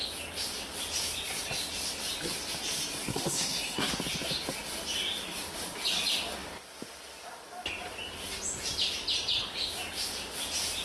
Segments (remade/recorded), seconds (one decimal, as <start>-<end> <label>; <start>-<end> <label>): 0.0-3.1 recorded; 3.1-3.9 remade; 3.9-10.8 recorded